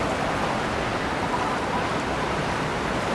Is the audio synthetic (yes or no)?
no